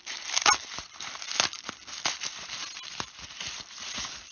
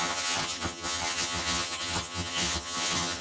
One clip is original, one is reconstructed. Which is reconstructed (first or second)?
second